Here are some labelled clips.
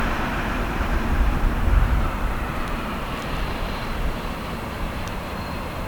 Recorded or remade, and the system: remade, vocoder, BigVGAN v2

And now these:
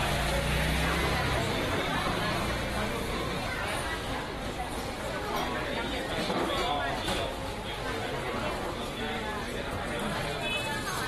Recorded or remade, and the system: recorded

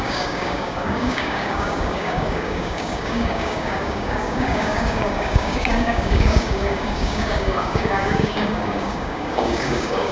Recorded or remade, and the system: remade, codec, DAC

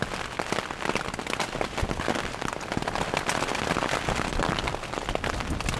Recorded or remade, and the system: recorded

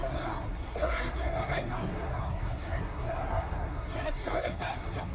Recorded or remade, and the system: remade, codec, SNAC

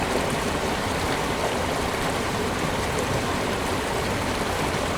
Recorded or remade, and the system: recorded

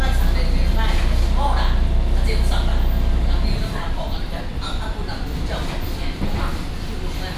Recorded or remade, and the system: recorded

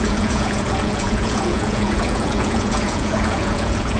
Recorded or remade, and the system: remade, vocoder, Vocos